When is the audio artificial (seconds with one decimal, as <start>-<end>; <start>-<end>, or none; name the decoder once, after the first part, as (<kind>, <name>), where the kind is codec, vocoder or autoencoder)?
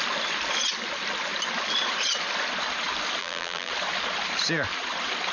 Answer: 3.2-3.7 (vocoder, BigVGAN v2)